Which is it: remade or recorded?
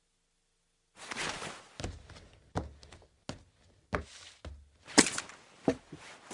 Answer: recorded